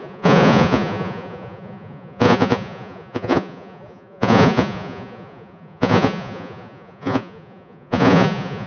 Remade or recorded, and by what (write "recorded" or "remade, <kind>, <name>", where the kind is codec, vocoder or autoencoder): remade, vocoder, Vocos